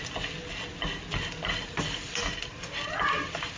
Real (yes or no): yes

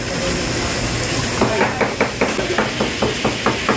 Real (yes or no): yes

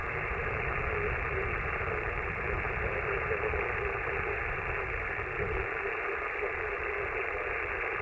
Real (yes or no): no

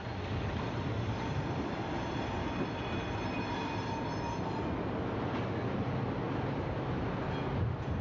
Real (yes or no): yes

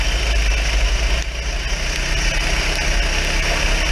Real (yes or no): yes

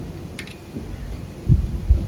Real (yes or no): no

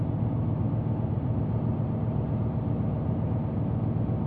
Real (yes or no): no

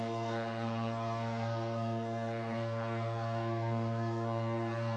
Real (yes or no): no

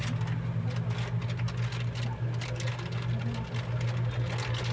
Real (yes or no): yes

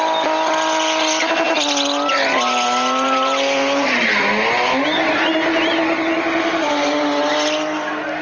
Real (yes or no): yes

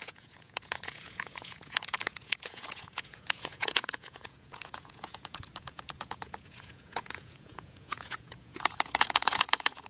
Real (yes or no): no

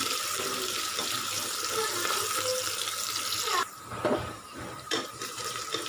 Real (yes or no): yes